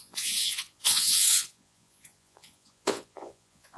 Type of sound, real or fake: fake